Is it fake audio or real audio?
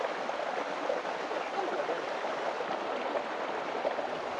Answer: real